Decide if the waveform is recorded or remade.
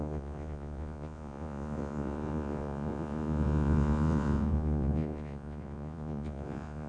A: remade